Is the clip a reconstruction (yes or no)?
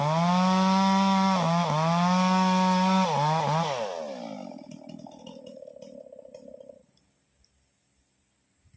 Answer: no